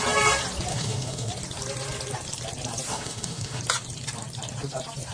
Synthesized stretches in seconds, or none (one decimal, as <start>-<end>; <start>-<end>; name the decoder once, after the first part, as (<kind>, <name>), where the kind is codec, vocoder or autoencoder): 0.7-1.3 (autoencoder, DAC-VAE); 2.9-3.6